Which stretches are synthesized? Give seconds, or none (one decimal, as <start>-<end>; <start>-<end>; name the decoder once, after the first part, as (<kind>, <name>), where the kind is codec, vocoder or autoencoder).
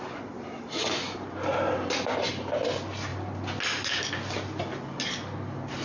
none